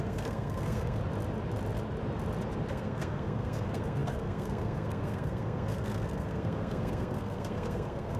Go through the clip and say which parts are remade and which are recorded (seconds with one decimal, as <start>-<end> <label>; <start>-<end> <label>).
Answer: 0.0-1.0 remade; 1.0-2.7 recorded; 2.7-8.2 remade